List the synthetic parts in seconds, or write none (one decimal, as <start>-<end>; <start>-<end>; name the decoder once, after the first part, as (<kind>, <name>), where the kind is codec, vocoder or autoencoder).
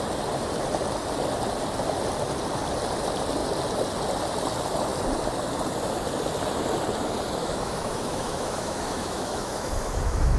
7.4-10.4 (autoencoder, DAC-VAE)